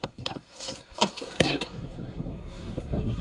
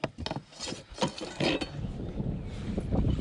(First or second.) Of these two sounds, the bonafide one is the second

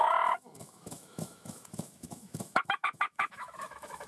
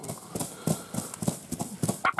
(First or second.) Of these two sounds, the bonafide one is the second